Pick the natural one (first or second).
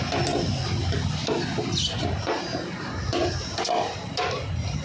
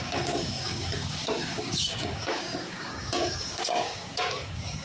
first